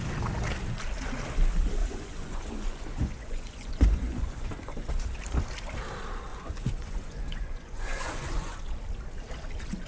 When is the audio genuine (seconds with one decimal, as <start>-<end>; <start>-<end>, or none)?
0.0-1.8; 4.9-6.3; 8.6-9.9